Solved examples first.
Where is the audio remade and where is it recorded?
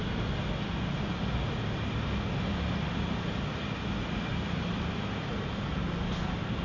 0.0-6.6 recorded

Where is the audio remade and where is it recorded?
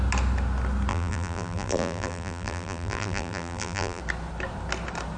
0.0-0.9 recorded; 0.9-4.0 remade; 4.0-5.2 recorded